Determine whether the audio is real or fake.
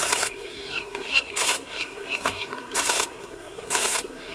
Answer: fake